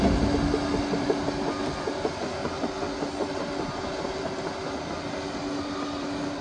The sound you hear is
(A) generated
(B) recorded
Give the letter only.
B